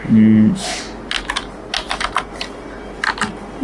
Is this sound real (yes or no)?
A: yes